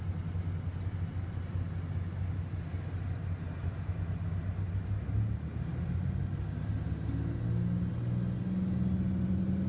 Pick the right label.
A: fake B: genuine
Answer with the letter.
B